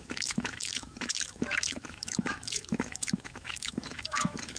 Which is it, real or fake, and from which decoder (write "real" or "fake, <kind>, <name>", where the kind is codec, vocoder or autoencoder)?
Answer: fake, autoencoder, DAC-VAE